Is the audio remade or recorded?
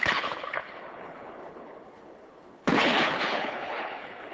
remade